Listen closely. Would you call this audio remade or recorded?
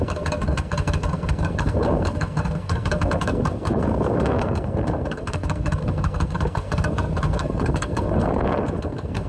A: remade